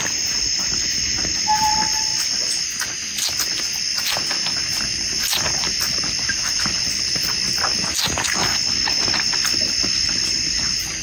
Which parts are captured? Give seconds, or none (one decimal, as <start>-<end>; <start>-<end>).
0.0-11.0